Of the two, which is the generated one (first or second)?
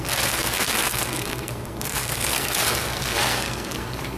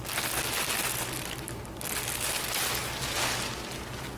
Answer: first